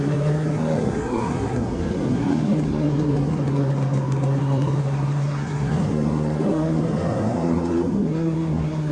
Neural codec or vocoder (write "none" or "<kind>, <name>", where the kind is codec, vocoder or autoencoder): codec, SNAC